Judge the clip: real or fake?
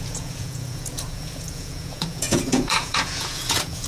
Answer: fake